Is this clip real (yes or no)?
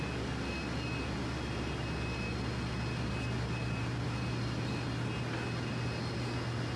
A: yes